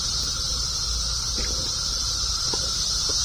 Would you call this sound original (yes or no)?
yes